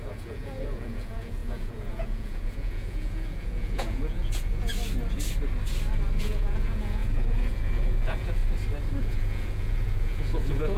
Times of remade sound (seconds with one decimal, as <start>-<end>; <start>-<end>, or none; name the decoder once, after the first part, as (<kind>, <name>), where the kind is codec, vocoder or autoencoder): 0.0-4.7 (vocoder, Vocos); 6.2-8.4; 9.0-10.8